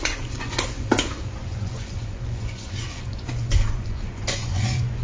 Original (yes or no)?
no